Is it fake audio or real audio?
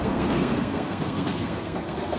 fake